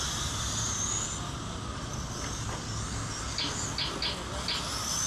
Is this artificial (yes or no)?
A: no